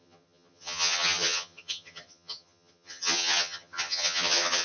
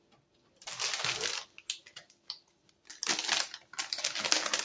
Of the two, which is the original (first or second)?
second